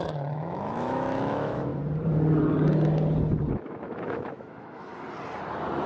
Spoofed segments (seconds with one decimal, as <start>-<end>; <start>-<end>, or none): 0.0-1.7; 3.5-4.9